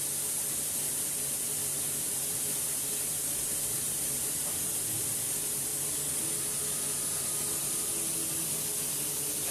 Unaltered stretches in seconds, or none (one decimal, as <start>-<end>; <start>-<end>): 0.0-1.6; 5.0-9.5